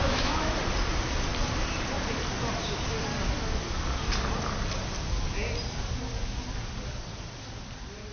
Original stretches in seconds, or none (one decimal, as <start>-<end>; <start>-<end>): 0.6-8.1